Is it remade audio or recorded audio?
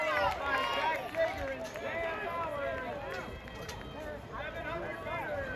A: recorded